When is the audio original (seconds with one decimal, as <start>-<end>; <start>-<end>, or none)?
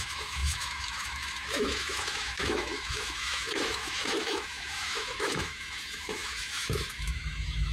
none